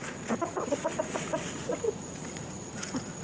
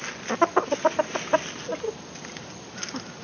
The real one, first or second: second